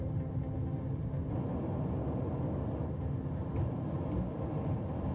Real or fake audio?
real